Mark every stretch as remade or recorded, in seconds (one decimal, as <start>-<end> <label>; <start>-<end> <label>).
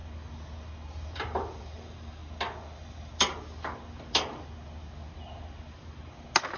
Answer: 0.0-1.1 recorded; 1.1-2.2 remade; 2.2-6.6 recorded